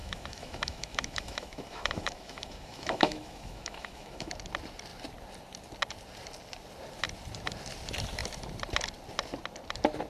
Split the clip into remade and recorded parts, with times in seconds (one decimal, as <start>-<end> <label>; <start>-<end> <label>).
0.0-4.3 remade; 4.3-10.1 recorded